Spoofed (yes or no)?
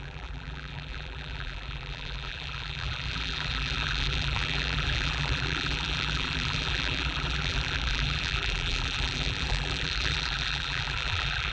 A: yes